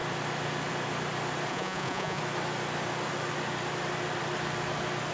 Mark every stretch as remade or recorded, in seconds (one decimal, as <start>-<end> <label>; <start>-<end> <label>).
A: 0.0-1.5 recorded; 1.5-2.2 remade; 2.2-5.1 recorded